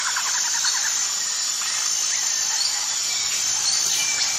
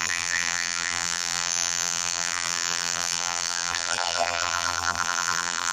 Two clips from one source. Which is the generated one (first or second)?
second